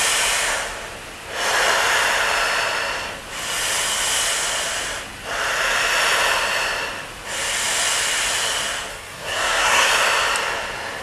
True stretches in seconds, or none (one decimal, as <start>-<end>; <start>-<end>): 0.0-8.9; 9.9-11.0